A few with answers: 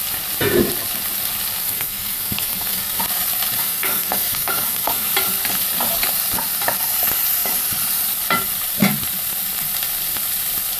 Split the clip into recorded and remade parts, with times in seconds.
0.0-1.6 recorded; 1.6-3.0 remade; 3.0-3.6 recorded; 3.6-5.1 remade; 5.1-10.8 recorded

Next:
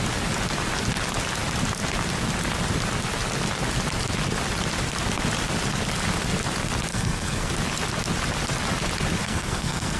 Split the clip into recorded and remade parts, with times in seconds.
0.0-6.9 recorded; 6.9-7.5 remade; 7.5-9.2 recorded; 9.2-10.0 remade